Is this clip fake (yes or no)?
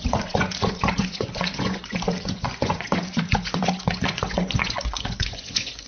yes